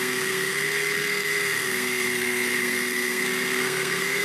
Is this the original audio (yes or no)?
no